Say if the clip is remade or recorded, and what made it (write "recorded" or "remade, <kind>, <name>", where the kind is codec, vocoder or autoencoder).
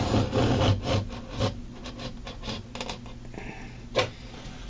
recorded